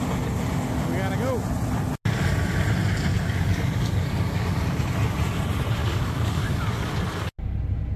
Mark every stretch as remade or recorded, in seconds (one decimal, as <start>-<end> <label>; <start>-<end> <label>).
0.0-3.1 recorded; 3.1-4.8 remade; 4.8-5.8 recorded; 5.8-7.0 remade; 7.0-8.0 recorded